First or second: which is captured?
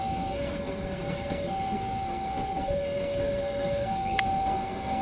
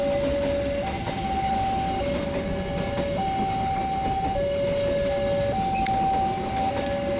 second